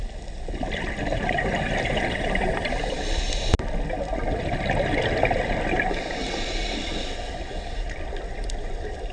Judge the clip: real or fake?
real